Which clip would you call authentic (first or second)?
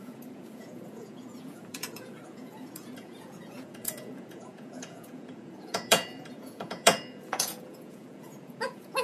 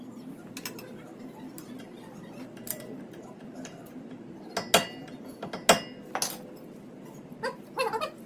second